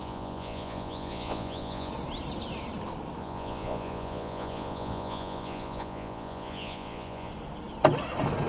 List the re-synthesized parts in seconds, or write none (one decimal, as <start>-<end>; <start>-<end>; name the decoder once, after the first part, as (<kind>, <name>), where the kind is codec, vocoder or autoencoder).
0.0-1.9 (vocoder, Vocos); 3.2-7.3